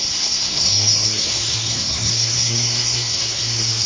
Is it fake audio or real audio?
fake